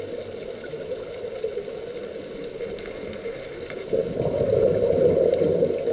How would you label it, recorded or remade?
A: recorded